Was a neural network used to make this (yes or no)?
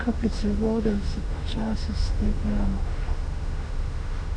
yes